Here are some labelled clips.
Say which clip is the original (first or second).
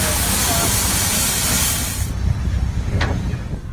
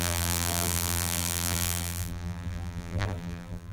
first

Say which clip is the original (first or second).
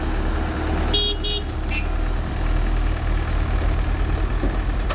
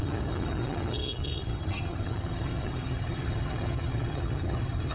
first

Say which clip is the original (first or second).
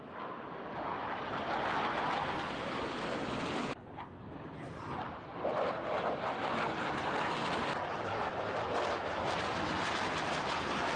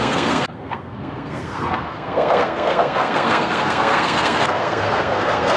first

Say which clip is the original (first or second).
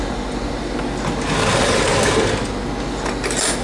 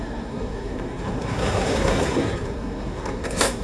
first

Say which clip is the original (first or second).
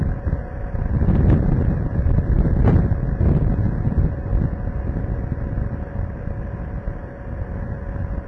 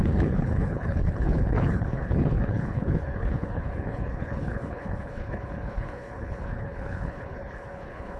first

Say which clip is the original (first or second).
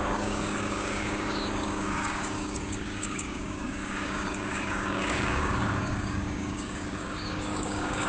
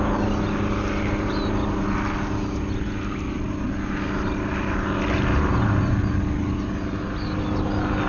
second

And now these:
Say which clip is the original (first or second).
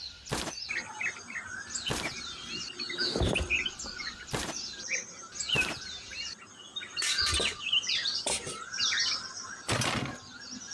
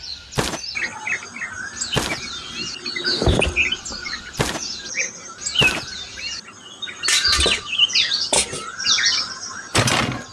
second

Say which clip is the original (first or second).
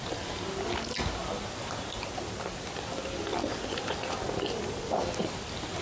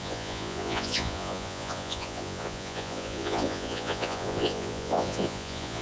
first